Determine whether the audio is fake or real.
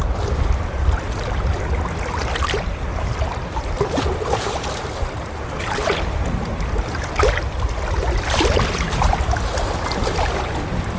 real